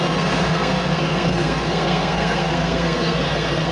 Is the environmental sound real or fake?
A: fake